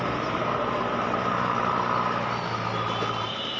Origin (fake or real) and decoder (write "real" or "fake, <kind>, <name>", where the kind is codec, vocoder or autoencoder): real